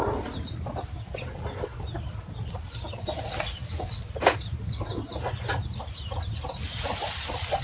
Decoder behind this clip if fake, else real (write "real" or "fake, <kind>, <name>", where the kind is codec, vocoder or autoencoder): real